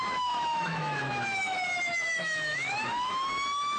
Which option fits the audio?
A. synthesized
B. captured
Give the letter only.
A